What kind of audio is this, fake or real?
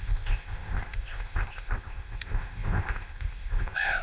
fake